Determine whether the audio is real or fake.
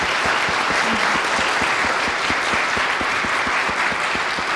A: real